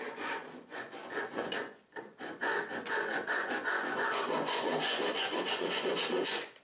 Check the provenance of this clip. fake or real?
fake